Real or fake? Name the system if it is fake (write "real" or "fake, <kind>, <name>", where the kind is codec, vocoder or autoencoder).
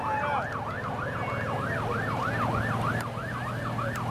real